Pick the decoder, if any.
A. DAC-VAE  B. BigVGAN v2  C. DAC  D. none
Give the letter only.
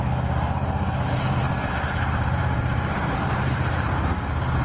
B